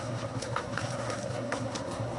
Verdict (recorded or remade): remade